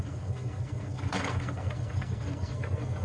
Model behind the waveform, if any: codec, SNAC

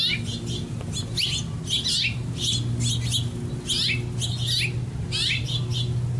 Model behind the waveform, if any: none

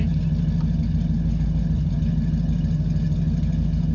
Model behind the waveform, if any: none